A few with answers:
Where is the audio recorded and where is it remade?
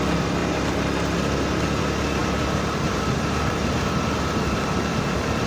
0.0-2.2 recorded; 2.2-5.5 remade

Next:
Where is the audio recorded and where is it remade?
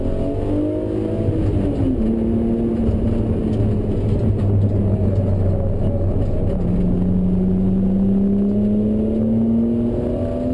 0.0-10.5 recorded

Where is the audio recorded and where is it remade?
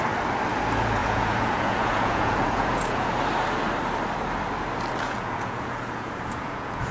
0.0-1.0 recorded; 1.0-3.1 remade; 3.1-4.9 recorded; 4.9-6.9 remade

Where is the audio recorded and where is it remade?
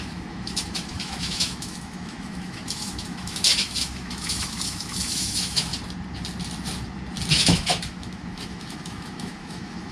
0.0-5.7 remade; 5.7-7.3 recorded; 7.3-9.9 remade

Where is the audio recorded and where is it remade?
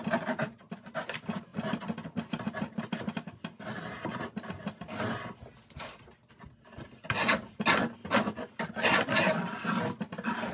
0.0-10.5 recorded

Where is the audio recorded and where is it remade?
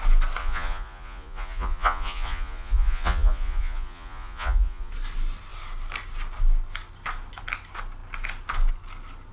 0.0-0.4 recorded; 0.4-4.9 remade; 4.9-9.3 recorded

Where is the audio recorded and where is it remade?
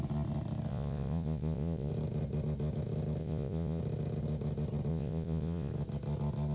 0.0-0.7 recorded; 0.7-1.9 remade; 1.9-3.2 recorded; 3.2-3.8 remade; 3.8-4.9 recorded; 4.9-5.7 remade; 5.7-6.5 recorded